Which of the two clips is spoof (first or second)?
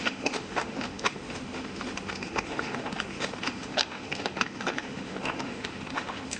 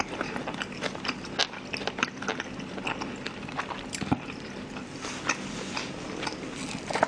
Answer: first